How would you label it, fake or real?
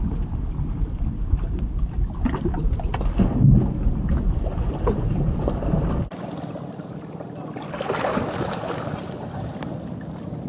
real